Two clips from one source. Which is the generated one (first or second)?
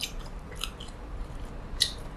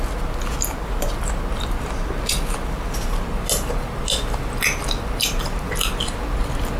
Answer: first